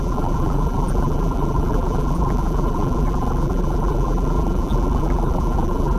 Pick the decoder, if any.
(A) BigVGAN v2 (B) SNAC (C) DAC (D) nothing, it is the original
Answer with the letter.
A